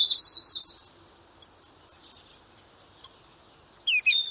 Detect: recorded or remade recorded